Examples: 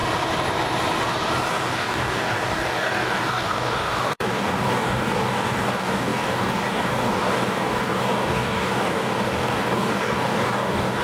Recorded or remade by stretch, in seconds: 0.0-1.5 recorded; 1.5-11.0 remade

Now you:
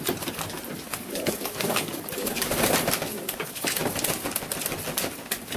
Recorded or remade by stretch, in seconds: 0.0-0.9 recorded; 0.9-2.5 remade; 2.5-3.1 recorded; 3.1-3.8 remade; 3.8-5.6 recorded